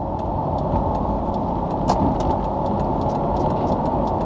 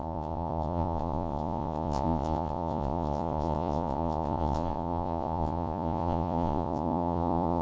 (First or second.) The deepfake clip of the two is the second